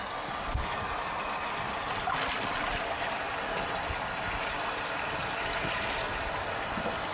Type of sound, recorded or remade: recorded